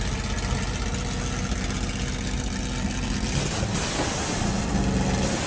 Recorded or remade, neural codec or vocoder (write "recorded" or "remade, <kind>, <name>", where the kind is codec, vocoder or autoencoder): recorded